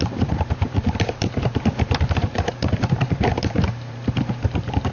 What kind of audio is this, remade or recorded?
remade